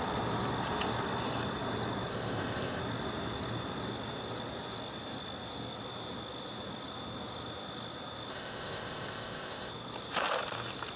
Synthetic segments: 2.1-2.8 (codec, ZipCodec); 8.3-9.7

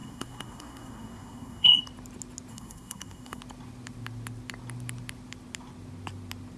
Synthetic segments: 0.0-1.8 (codec, SNAC); 2.5-3.4

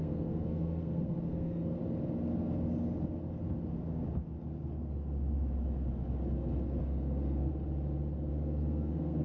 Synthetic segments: 0.0-1.8 (codec, SNAC); 6.8-7.5; 8.3-9.2

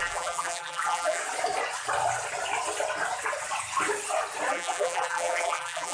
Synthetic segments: 0.0-1.2 (vocoder, BigVGAN v2); 4.5-5.9

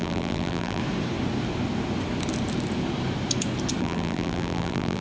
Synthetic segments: 0.0-0.8 (vocoder, BigVGAN v2); 3.8-5.0

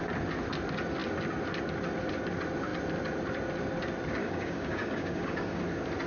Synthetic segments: 4.2-5.6 (codec, DAC)

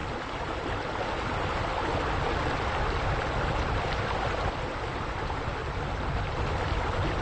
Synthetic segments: none

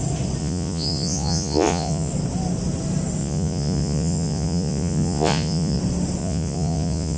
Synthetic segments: 0.4-2.1 (vocoder, Vocos); 3.2-5.8; 6.2-7.2